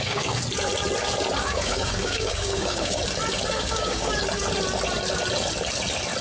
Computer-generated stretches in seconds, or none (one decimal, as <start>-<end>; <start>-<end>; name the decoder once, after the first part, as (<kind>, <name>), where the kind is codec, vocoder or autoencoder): 0.0-0.4 (codec, DAC); 1.4-3.0; 3.5-4.2